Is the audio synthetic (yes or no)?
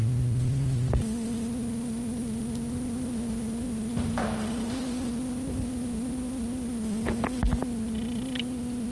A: no